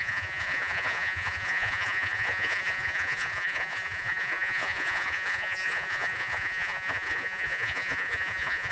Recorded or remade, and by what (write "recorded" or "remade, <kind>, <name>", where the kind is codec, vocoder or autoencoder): remade, vocoder, Vocos